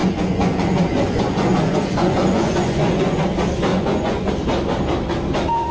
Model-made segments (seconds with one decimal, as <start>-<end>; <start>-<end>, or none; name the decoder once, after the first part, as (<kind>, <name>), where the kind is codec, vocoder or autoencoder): 0.0-3.2 (vocoder, Vocos); 3.7-4.3